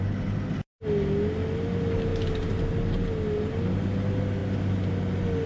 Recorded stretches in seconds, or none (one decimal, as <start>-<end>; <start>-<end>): 0.0-5.5